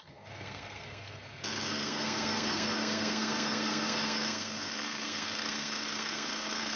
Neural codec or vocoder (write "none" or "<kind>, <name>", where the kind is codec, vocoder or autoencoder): codec, SNAC